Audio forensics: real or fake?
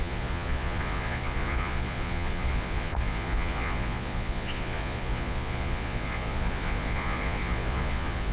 fake